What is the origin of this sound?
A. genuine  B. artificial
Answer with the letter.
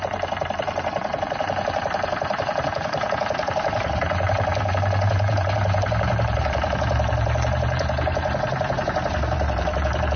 B